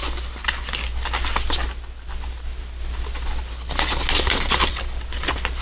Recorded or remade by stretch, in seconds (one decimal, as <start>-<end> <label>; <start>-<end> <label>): 0.0-5.6 recorded